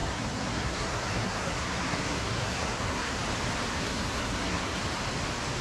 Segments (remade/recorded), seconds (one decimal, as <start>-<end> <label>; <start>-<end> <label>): 0.0-3.2 remade; 3.2-3.7 recorded; 3.7-4.8 remade; 4.8-5.6 recorded